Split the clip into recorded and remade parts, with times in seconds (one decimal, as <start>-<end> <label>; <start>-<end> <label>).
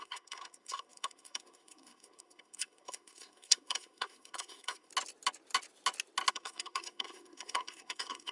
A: 0.0-4.9 remade; 4.9-6.3 recorded; 6.3-8.3 remade